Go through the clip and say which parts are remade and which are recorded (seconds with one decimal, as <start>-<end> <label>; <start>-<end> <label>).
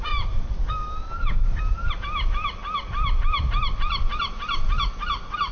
0.0-0.6 remade; 0.6-1.6 recorded; 1.6-2.6 remade; 2.6-3.8 recorded; 3.8-5.5 remade